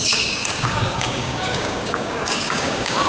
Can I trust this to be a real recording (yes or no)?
no